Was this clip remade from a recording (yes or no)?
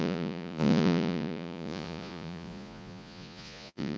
yes